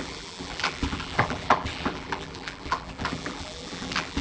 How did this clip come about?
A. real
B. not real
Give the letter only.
B